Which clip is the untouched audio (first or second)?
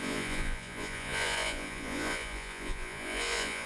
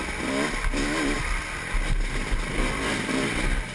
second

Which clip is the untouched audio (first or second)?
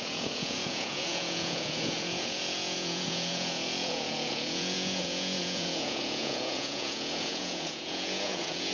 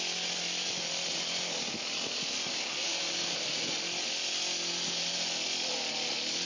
second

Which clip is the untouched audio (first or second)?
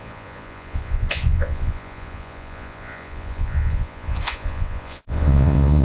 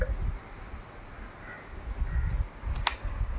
second